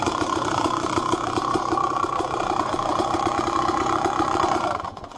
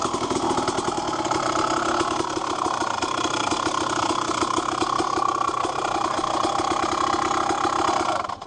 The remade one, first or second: first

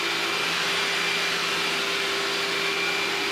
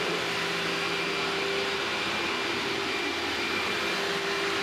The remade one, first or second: second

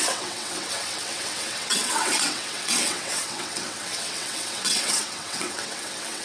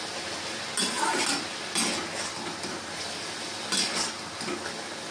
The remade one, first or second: first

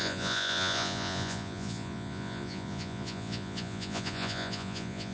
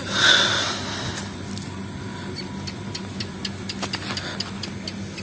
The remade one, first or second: first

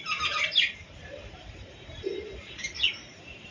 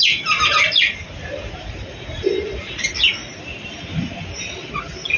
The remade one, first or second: first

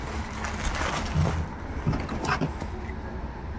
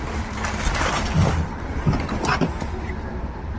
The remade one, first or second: second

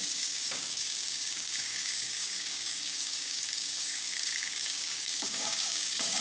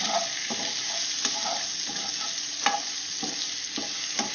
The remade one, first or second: first